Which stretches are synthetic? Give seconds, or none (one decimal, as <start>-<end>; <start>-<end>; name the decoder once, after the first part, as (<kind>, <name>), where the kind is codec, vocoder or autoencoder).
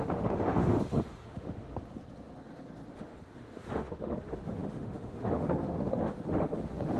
0.0-1.8 (autoencoder, DAC-VAE); 2.9-7.0